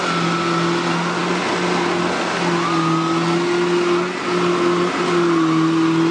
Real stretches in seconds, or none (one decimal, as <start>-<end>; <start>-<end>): 0.0-6.1